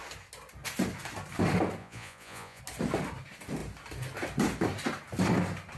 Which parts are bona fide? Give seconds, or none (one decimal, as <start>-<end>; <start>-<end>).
0.0-1.8; 2.6-5.8